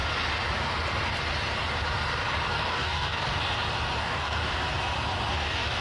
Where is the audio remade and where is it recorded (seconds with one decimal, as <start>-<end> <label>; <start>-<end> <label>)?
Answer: 0.0-2.5 recorded; 2.5-3.4 remade; 3.4-4.0 recorded; 4.0-4.4 remade; 4.4-5.3 recorded; 5.3-5.8 remade